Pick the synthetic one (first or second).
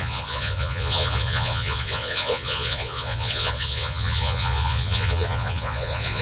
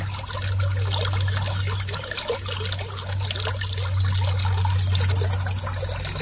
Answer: first